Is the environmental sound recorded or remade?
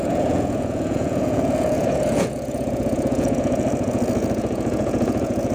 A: remade